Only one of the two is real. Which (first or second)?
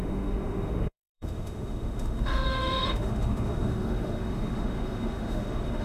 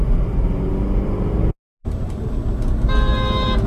second